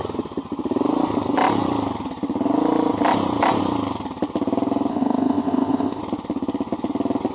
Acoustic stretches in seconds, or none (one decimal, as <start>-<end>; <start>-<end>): 0.0-4.9; 6.0-7.3